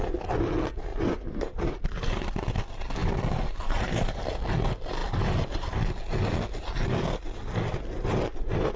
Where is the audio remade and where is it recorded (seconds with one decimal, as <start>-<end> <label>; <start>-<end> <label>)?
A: 0.0-0.9 recorded; 0.9-1.7 remade; 1.7-3.0 recorded; 3.0-4.3 remade; 4.3-8.8 recorded